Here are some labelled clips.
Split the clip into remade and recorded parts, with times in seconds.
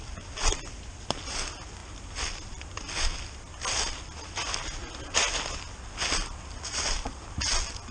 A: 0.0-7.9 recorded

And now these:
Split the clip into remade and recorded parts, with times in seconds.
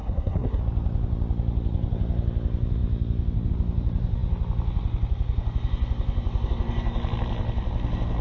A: 0.0-0.6 remade; 0.6-8.2 recorded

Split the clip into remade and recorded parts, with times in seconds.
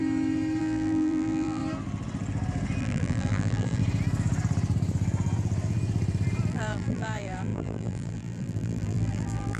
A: 0.0-0.6 recorded; 0.6-1.6 remade; 1.6-2.8 recorded; 2.8-3.8 remade; 3.8-6.5 recorded; 6.5-9.6 remade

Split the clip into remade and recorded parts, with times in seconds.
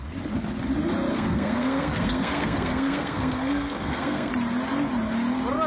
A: 0.0-1.1 recorded; 1.1-4.3 remade; 4.3-5.7 recorded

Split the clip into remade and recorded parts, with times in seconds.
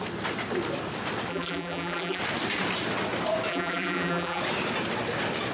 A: 0.0-1.3 recorded; 1.3-2.2 remade; 2.2-3.5 recorded; 3.5-4.4 remade; 4.4-5.5 recorded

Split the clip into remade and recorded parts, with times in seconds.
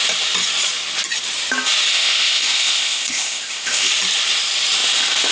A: 0.0-1.9 recorded; 1.9-3.9 remade; 3.9-5.3 recorded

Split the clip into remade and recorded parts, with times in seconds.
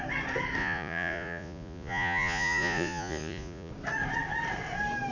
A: 0.0-0.6 recorded; 0.6-3.7 remade; 3.7-5.1 recorded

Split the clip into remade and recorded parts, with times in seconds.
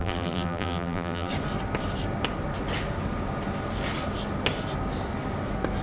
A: 0.0-1.3 remade; 1.3-5.8 recorded